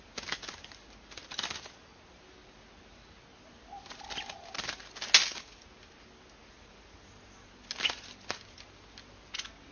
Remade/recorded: recorded